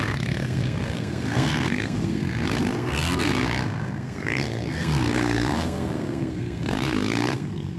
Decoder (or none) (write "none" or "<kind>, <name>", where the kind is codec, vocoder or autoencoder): codec, SNAC